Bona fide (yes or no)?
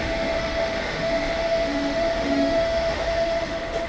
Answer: no